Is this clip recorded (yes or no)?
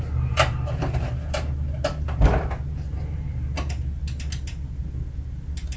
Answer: yes